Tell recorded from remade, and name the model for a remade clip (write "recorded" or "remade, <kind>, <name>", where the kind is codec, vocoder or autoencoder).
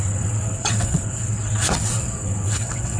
remade, vocoder, WaveNeXt